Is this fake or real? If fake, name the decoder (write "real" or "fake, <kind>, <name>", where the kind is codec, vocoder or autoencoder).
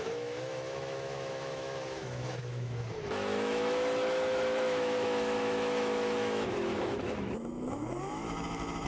fake, autoencoder, DAC-VAE